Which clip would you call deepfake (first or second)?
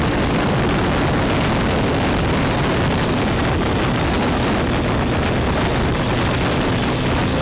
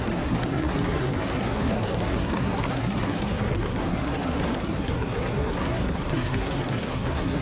second